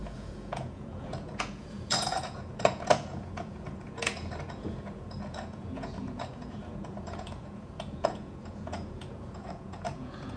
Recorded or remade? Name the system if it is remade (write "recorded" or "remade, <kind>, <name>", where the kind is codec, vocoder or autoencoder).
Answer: remade, vocoder, Vocos